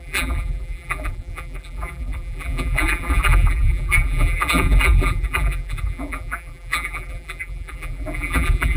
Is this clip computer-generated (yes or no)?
yes